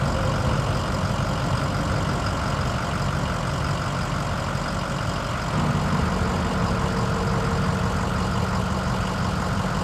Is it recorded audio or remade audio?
recorded